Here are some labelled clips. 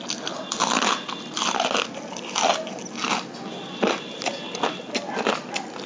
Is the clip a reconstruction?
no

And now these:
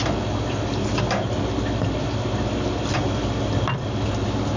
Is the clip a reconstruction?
no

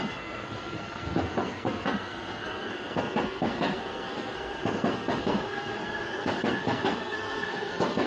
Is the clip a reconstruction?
yes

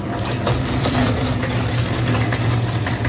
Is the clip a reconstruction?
yes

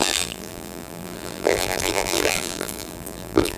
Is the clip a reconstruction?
yes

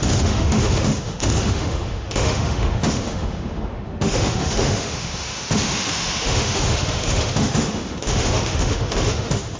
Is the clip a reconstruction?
yes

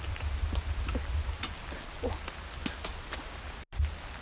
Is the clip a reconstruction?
no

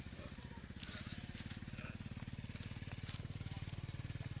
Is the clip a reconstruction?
no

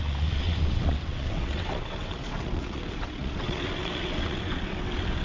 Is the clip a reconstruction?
yes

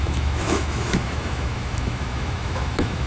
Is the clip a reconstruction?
yes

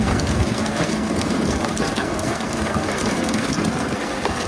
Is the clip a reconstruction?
yes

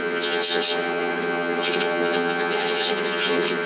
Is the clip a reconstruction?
yes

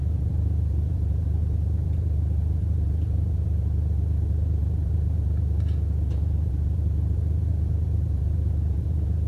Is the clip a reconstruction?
yes